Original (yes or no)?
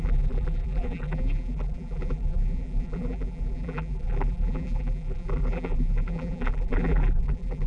no